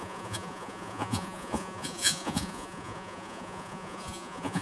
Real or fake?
fake